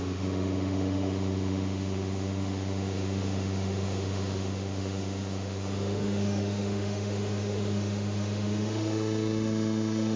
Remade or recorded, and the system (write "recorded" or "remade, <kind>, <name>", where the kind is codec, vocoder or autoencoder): remade, autoencoder, DAC-VAE